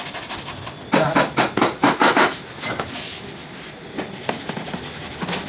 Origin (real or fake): real